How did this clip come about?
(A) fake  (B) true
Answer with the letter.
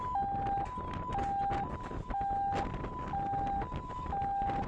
B